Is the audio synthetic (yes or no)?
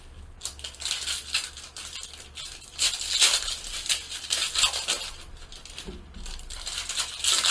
no